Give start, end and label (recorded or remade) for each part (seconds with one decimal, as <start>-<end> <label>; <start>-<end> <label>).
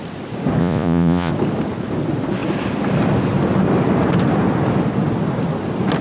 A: 0.0-0.6 recorded; 0.6-1.3 remade; 1.3-6.0 recorded